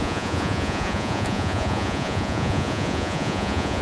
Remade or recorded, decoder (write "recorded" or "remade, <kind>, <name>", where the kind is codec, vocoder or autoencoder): remade, vocoder, Vocos